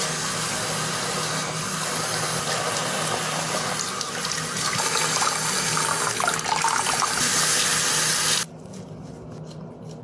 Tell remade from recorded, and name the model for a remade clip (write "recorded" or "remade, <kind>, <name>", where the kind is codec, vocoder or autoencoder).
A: recorded